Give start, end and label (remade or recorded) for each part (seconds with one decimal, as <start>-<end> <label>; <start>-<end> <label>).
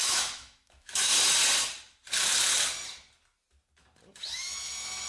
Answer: 0.0-1.1 remade; 1.1-4.2 recorded; 4.2-5.1 remade